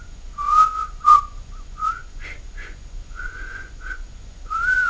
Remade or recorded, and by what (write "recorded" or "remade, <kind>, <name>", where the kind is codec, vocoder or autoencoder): remade, vocoder, Vocos